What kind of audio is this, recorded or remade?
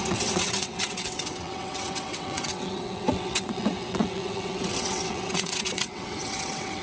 remade